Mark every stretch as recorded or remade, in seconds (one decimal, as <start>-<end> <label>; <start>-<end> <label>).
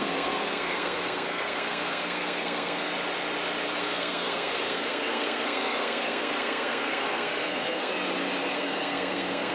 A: 0.0-2.9 remade; 2.9-3.8 recorded; 3.8-7.9 remade; 7.9-8.5 recorded; 8.5-9.5 remade